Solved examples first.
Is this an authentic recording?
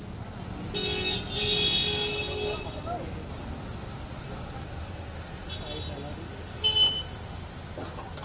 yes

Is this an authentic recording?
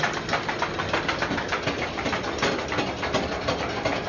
yes